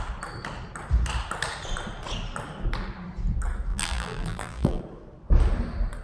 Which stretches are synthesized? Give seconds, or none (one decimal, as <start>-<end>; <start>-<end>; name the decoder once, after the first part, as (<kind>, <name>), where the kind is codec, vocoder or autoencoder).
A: 3.7-4.8 (vocoder, BigVGAN v2)

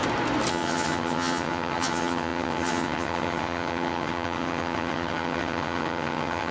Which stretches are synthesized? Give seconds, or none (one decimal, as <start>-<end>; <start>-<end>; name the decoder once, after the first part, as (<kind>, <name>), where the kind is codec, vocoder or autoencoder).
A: 0.5-6.5 (vocoder, HiFi-GAN)

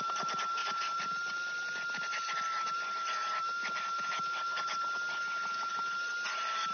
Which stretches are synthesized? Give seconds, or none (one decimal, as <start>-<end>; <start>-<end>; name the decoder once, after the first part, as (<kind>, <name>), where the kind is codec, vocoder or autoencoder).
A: none